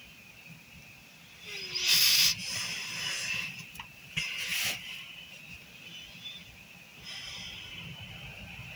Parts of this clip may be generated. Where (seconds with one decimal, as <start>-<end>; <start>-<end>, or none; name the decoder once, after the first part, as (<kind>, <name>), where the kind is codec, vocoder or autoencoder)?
none